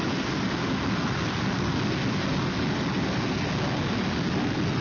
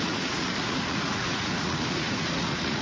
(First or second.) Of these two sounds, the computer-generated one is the second